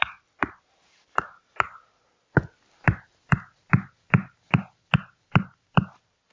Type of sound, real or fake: real